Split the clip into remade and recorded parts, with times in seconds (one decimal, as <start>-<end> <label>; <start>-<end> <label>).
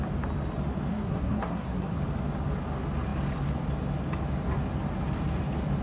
0.0-0.9 recorded; 0.9-2.0 remade; 2.0-5.8 recorded